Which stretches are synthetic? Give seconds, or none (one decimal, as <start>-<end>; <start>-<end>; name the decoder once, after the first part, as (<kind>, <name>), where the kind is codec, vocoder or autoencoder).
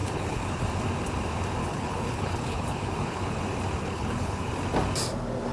0.0-0.6 (codec, HILCodec); 1.6-3.4; 3.8-4.5